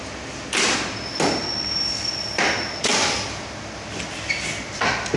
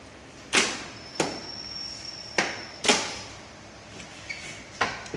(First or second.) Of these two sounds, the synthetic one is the second